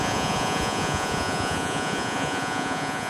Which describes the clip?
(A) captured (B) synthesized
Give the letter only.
B